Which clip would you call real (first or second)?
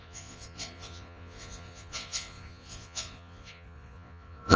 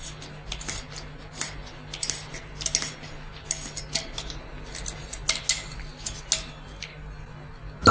second